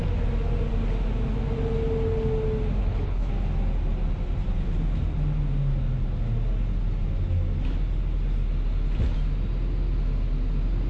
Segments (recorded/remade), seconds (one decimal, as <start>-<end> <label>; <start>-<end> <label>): 0.0-2.8 recorded; 2.8-3.3 remade; 3.3-10.9 recorded